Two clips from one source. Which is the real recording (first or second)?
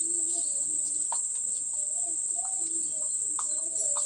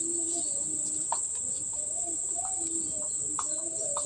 second